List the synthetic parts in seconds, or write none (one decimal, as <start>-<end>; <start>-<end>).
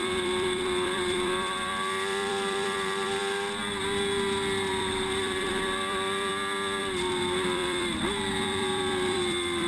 0.0-3.2; 4.7-6.3; 6.8-9.7